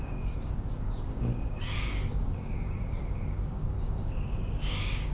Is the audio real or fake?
fake